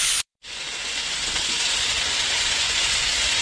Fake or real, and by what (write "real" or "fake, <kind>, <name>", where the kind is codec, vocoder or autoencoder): fake, vocoder, Vocos